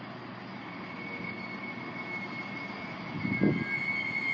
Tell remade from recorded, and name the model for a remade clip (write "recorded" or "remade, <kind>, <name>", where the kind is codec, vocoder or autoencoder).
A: recorded